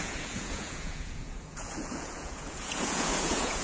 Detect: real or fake fake